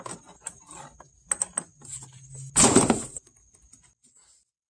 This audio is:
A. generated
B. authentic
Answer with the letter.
B